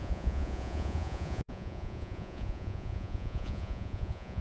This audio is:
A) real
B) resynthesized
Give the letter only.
B